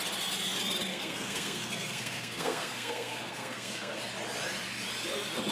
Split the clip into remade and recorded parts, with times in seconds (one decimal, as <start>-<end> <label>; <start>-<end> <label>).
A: 0.0-0.9 recorded; 0.9-4.0 remade; 4.0-5.5 recorded

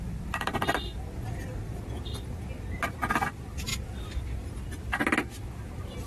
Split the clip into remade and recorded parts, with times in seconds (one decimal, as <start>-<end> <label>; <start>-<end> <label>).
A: 0.0-6.1 recorded